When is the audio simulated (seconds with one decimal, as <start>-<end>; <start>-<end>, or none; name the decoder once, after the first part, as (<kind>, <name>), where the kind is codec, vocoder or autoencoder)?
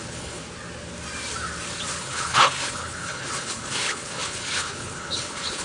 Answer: 0.0-0.4 (codec, HILCodec); 2.0-5.6